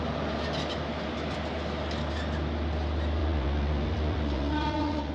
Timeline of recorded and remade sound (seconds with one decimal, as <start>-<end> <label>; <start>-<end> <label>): 0.0-3.2 recorded; 3.2-5.1 remade